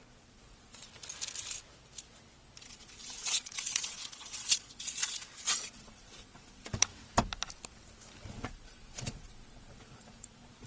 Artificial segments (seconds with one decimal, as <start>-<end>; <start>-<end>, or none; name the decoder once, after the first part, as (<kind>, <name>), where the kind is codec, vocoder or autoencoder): 0.0-0.9 (vocoder, Vocos); 2.6-6.9; 8.3-10.7